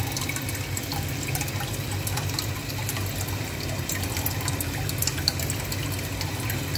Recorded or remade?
recorded